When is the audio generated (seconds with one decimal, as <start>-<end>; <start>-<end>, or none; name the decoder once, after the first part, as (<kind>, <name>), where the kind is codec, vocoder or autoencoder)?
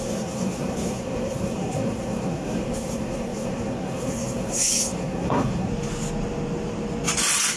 0.0-5.7 (codec, SNAC)